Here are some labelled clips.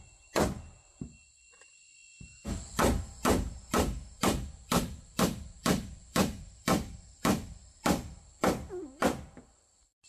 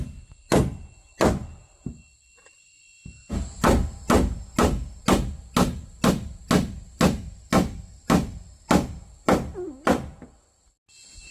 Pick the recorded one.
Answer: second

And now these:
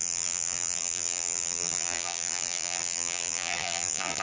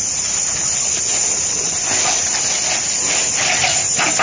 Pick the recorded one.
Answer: second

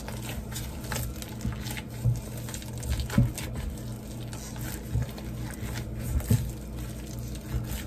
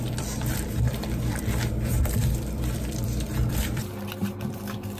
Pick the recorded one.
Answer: first